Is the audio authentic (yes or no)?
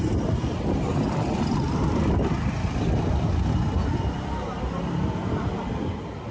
yes